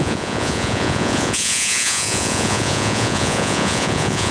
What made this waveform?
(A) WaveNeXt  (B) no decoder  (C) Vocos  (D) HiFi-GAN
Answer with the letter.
C